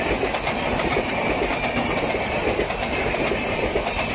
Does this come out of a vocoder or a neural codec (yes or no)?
no